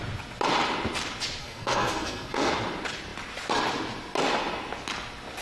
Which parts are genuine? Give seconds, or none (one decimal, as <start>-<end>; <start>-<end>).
0.0-1.4; 2.5-5.4